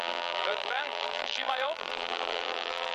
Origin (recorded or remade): remade